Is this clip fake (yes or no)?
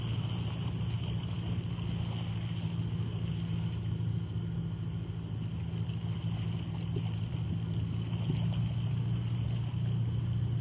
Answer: no